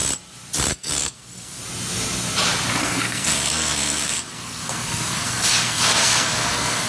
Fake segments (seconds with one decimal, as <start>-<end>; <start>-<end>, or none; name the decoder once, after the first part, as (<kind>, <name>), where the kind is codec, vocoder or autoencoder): 0.7-1.6 (codec, SNAC); 2.8-6.9